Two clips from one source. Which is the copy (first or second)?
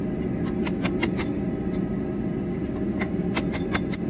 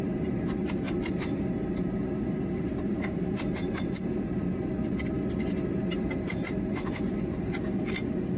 second